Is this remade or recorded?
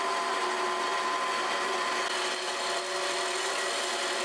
recorded